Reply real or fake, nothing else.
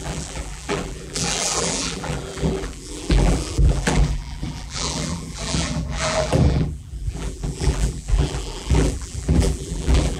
fake